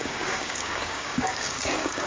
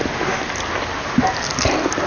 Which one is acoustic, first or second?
second